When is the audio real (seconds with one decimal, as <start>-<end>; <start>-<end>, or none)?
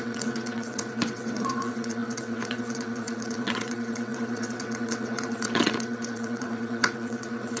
none